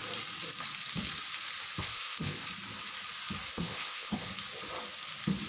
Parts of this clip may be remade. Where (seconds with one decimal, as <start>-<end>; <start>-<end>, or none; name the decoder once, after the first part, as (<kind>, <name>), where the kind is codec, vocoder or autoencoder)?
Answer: 1.8-2.5 (codec, ZipCodec); 3.5-4.3